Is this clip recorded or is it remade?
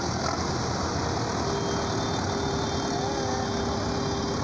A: recorded